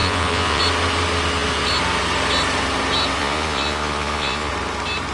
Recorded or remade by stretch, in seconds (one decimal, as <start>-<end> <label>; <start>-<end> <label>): 0.0-0.6 remade; 0.6-3.2 recorded; 3.2-4.5 remade; 4.5-5.1 recorded